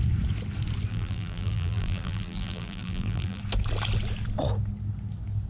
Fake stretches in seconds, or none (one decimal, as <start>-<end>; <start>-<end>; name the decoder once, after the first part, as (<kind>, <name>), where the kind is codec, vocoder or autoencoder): 0.9-3.4 (vocoder, BigVGAN v2)